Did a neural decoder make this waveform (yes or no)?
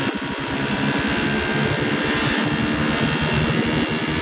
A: no